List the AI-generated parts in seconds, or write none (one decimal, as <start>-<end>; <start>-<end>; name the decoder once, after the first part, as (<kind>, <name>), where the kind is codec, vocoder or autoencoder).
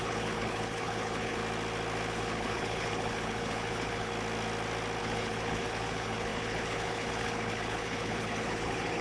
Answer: 0.0-1.4 (codec, HILCodec); 2.1-4.1; 5.0-9.0